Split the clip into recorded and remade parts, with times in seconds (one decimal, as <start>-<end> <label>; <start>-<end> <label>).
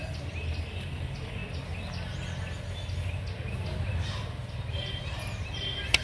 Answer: 0.0-1.4 remade; 1.4-5.0 recorded; 5.0-6.0 remade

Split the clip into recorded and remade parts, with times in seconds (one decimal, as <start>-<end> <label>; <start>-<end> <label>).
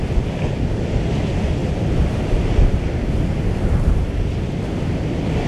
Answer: 0.0-1.6 recorded; 1.6-4.1 remade; 4.1-5.5 recorded